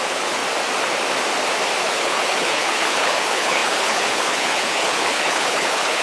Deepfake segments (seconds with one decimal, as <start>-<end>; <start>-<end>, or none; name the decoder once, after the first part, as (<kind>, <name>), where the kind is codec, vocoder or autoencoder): 0.0-0.4 (codec, HILCodec); 1.8-6.0